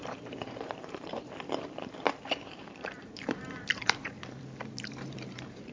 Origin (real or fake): fake